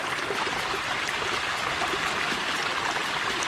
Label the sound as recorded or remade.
recorded